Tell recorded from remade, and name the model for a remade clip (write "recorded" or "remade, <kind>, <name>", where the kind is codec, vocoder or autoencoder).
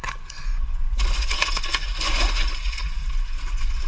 remade, vocoder, Vocos